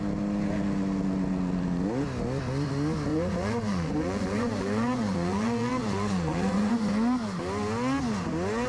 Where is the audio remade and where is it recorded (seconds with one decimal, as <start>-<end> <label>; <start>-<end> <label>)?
0.0-3.1 recorded; 3.1-6.7 remade; 6.7-8.7 recorded